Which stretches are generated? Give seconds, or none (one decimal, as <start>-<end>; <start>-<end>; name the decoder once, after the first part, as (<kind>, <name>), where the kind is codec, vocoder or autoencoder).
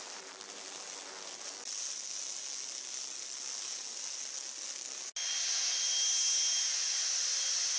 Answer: none